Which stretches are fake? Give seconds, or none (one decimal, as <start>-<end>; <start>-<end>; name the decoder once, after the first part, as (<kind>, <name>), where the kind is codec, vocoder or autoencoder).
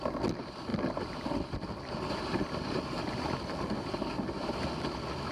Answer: 0.7-3.9 (vocoder, BigVGAN v2)